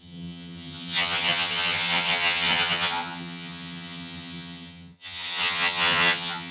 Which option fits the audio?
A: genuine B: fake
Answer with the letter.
B